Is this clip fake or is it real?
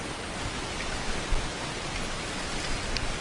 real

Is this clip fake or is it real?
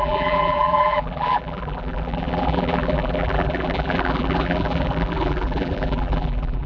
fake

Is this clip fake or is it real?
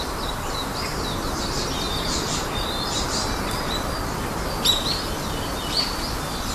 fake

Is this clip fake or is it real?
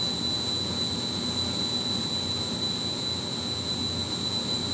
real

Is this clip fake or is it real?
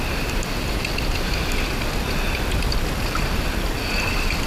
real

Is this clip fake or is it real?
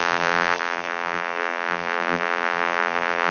fake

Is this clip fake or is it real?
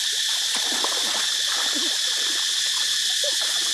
real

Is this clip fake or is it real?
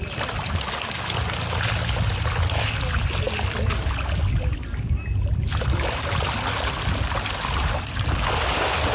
real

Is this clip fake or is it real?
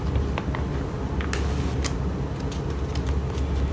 real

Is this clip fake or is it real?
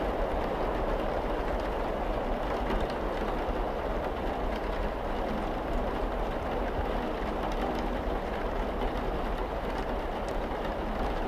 real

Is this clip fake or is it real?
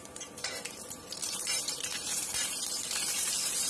fake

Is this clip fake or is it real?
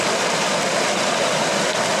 real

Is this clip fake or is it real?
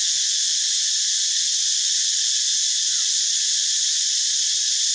fake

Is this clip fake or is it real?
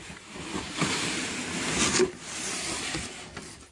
real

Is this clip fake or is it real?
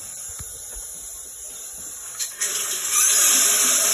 fake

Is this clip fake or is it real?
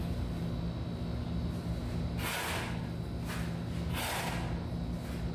real